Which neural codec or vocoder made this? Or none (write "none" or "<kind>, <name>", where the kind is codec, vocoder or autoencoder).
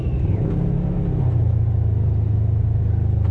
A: none